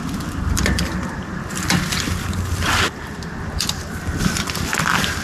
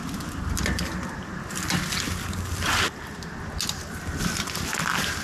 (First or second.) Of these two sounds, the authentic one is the second